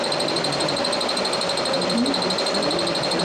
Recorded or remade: recorded